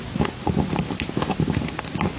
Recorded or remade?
recorded